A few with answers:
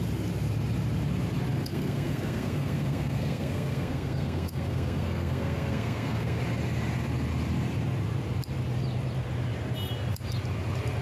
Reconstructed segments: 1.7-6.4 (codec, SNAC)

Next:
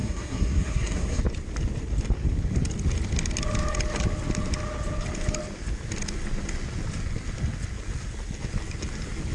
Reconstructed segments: 0.0-1.2 (codec, SNAC)

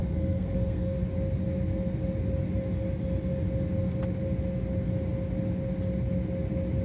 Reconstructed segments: 0.0-1.0 (codec, SNAC)

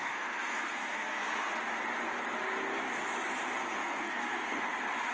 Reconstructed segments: 0.0-1.2 (codec, SNAC); 3.8-4.6